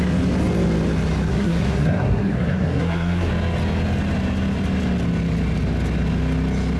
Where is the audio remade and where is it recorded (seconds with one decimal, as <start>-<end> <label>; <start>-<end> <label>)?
0.0-1.3 recorded; 1.3-3.3 remade; 3.3-6.8 recorded